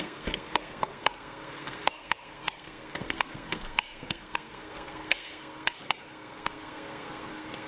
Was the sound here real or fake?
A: fake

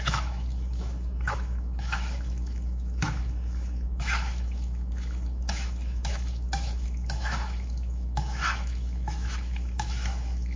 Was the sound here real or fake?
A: fake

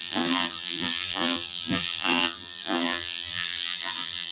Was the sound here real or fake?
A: fake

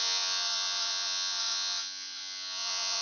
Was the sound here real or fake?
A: fake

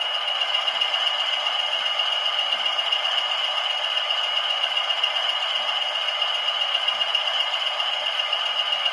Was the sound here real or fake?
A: real